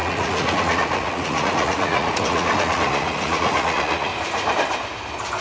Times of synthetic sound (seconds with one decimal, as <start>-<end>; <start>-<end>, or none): 0.0-4.1